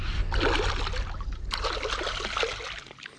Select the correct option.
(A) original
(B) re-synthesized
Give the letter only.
A